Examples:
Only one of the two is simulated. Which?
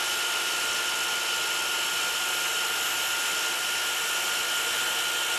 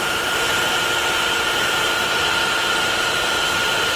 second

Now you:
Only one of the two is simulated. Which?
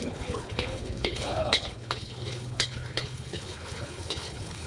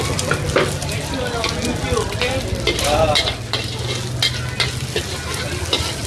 first